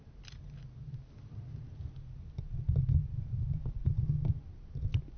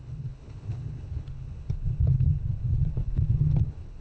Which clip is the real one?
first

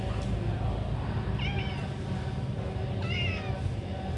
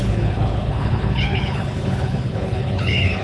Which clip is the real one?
first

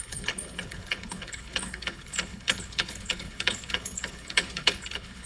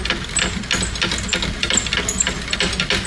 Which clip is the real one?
second